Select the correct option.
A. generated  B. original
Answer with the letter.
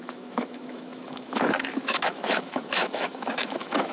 A